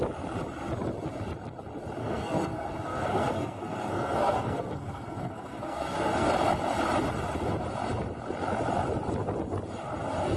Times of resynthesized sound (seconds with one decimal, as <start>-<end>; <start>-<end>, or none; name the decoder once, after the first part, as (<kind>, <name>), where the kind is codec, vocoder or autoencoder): 2.0-6.3 (codec, SNAC)